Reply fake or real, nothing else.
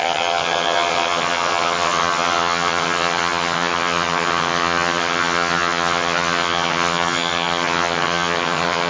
fake